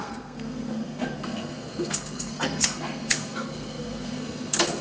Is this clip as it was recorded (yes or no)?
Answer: no